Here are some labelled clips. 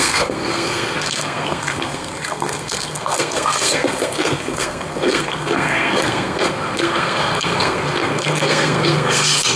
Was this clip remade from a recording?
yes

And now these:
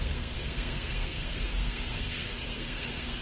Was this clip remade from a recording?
yes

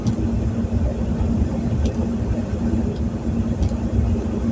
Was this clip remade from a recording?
no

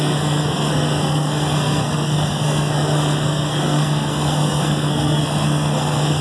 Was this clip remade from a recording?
yes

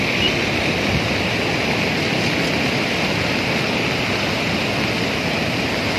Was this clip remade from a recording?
no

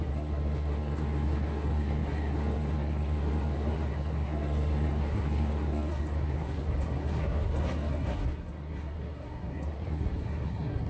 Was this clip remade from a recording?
yes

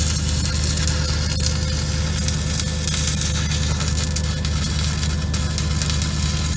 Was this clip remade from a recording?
no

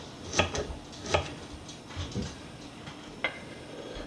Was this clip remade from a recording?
no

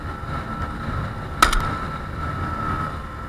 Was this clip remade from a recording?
no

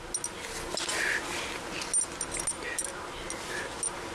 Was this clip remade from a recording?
no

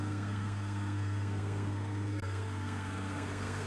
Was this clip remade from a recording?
yes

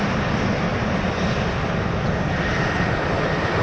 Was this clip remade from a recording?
no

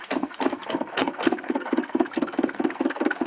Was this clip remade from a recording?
yes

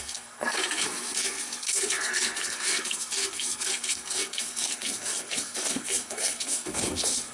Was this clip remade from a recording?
yes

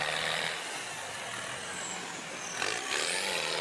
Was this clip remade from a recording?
no